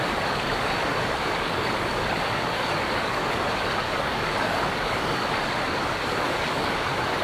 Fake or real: fake